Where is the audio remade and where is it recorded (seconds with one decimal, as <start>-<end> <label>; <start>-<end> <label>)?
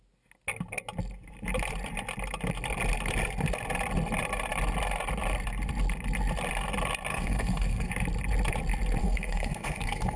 0.0-7.1 recorded; 7.1-7.9 remade; 7.9-9.0 recorded; 9.0-10.2 remade